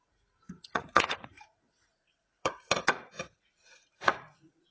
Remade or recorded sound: remade